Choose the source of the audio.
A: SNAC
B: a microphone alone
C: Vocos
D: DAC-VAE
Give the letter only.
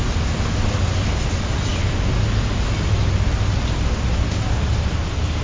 B